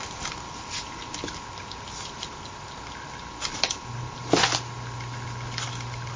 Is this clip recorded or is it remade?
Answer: recorded